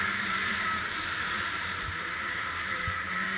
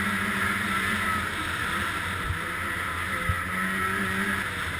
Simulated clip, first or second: first